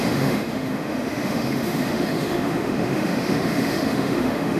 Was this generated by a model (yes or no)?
yes